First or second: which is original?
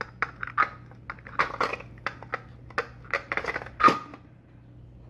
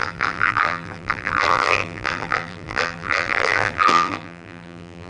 first